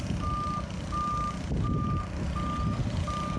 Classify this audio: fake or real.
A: real